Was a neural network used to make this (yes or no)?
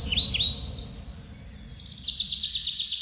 no